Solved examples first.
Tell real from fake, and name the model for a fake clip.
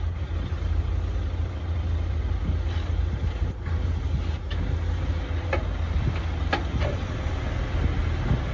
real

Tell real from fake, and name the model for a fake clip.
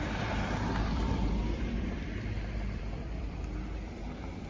fake, vocoder, BigVGAN v2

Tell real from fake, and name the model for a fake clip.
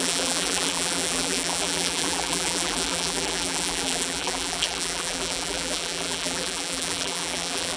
fake, vocoder, BigVGAN v2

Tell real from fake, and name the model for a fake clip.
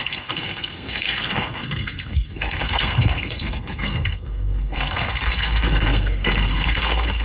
fake, codec, SNAC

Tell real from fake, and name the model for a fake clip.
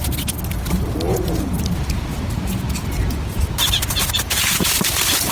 real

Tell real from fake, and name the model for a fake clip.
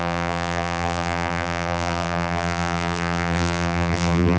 fake, vocoder, BigVGAN v2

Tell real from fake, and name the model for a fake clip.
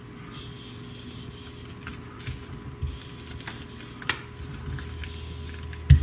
real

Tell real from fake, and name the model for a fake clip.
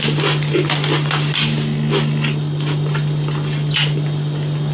real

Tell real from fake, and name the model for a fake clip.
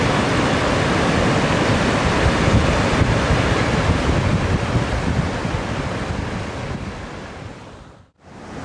real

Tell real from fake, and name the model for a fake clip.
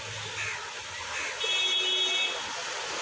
real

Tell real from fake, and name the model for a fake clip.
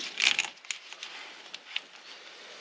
real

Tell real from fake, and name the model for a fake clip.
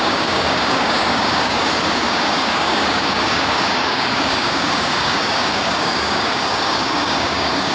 fake, codec, DAC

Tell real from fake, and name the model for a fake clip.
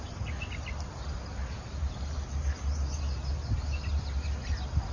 real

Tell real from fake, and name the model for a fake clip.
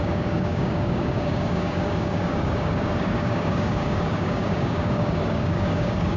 fake, codec, DAC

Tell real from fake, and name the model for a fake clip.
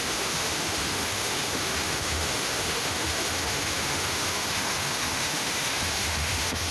fake, autoencoder, DAC-VAE